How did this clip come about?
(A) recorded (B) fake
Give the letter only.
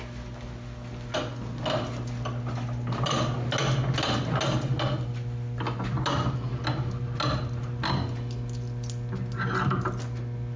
A